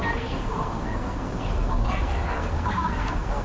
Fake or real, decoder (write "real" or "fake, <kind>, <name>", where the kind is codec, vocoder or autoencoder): fake, codec, SNAC